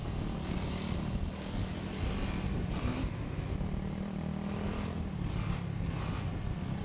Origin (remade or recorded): recorded